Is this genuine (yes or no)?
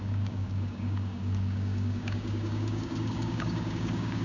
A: no